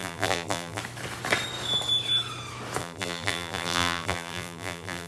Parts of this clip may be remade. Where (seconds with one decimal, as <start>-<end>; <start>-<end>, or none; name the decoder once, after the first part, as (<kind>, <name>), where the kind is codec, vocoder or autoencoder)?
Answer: 0.0-0.8 (vocoder, BigVGAN v2); 2.8-5.1